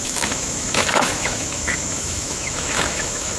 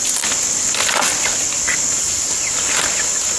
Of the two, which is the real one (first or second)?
second